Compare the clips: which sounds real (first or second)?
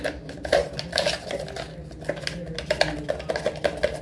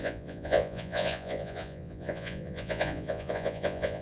first